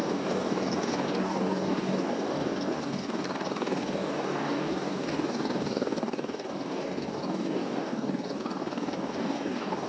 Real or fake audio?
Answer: fake